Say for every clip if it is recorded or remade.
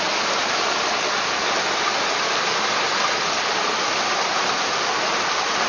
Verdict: recorded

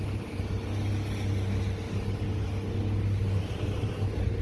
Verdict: recorded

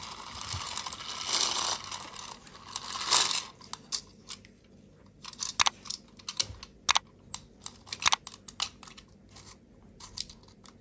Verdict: recorded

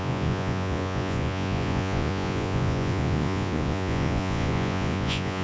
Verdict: remade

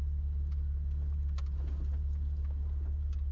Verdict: recorded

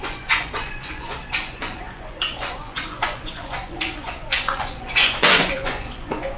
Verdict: remade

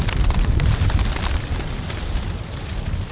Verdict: recorded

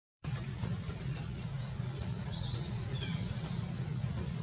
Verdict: remade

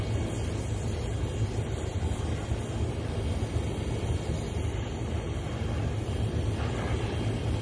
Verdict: recorded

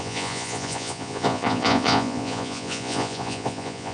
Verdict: remade